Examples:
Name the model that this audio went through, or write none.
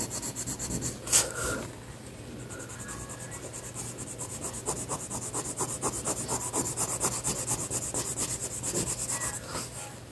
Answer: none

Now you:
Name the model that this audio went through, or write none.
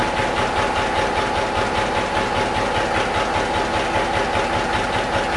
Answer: none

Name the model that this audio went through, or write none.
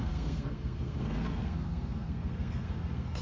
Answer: codec, SNAC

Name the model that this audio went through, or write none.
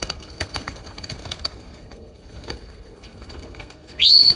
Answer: codec, SNAC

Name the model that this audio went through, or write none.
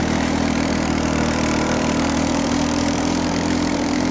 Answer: vocoder, BigVGAN v2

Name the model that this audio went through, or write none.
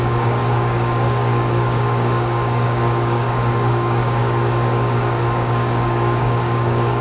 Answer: codec, DAC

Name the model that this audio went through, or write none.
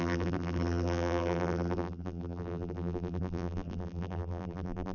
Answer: vocoder, BigVGAN v2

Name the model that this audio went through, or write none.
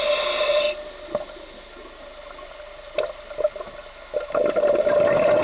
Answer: none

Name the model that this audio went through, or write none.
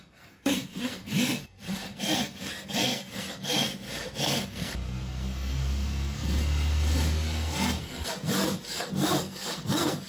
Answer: codec, SNAC